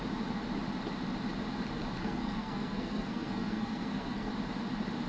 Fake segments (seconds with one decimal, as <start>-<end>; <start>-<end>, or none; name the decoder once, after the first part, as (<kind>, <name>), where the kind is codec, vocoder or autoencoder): 2.0-4.3 (codec, SNAC)